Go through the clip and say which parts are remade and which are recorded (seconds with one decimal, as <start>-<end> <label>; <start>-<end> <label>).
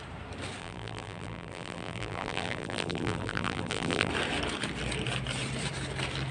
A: 0.0-0.6 recorded; 0.6-4.1 remade; 4.1-6.3 recorded